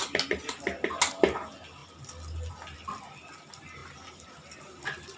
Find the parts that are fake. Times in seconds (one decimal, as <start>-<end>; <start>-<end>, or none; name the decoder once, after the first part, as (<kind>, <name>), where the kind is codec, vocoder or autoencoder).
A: none